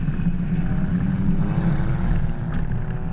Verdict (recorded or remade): recorded